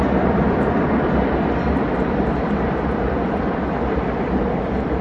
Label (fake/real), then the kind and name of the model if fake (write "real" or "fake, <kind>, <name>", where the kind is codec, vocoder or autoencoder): fake, vocoder, BigVGAN v2